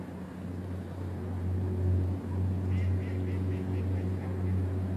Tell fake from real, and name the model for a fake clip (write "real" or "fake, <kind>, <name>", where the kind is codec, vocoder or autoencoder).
real